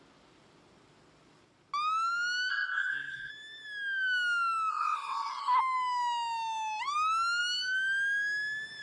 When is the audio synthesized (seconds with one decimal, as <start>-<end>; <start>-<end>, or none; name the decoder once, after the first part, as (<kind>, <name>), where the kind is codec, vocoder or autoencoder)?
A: 2.5-3.3 (codec, SNAC); 4.7-5.6